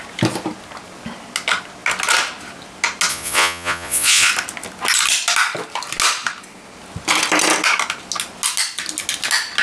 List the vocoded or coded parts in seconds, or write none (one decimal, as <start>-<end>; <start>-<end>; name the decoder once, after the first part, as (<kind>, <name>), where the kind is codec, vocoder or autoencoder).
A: 3.1-4.3 (vocoder, Vocos)